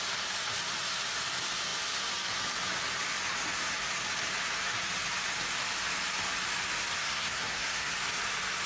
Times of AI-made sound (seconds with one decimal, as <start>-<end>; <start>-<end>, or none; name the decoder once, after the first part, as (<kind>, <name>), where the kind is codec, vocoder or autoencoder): 7.0-7.9 (codec, SNAC)